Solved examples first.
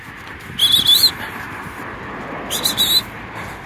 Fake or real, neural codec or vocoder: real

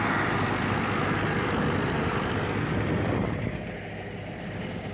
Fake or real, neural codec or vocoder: real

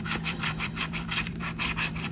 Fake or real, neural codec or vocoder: fake, vocoder, BigVGAN v2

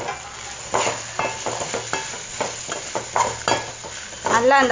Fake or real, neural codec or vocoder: real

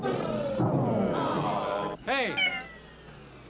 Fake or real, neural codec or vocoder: real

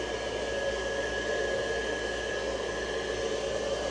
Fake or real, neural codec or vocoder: real